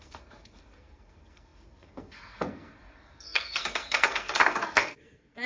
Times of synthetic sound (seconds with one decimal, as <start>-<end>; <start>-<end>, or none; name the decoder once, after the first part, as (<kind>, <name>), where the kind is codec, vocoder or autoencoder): 0.0-5.5 (codec, SNAC)